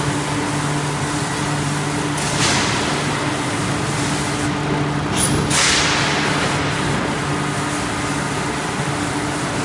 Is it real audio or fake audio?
real